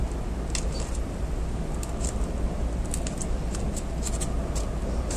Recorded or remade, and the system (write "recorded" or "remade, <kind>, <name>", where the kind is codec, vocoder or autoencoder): recorded